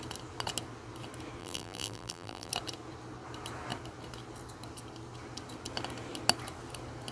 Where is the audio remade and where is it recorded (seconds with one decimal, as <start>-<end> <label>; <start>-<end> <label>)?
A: 0.0-1.4 recorded; 1.4-2.5 remade; 2.5-7.1 recorded